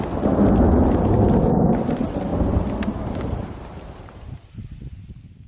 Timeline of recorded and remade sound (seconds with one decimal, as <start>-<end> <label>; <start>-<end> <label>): 0.0-2.3 recorded; 2.3-4.5 remade; 4.5-5.5 recorded